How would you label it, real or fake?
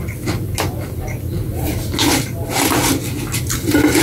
real